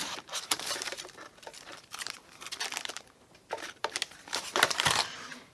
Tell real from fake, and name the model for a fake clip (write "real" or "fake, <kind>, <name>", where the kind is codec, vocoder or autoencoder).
fake, vocoder, BigVGAN v2